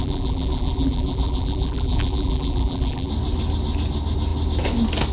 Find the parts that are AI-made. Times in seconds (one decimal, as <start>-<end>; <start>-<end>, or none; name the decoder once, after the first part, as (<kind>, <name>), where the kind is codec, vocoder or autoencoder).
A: 0.0-3.1 (vocoder, BigVGAN v2)